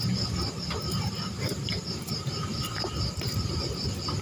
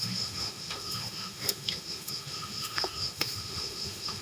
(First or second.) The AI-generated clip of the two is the second